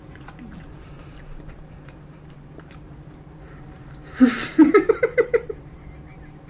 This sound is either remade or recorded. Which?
remade